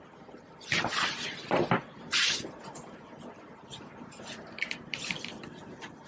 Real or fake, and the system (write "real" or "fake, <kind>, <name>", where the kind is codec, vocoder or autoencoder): fake, vocoder, BigVGAN v2